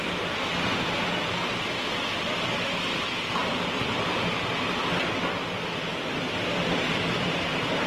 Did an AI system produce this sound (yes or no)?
no